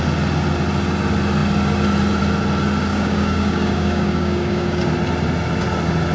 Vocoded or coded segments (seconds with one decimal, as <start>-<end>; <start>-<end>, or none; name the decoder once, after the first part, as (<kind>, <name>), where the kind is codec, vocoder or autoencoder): 2.9-4.9 (codec, DAC)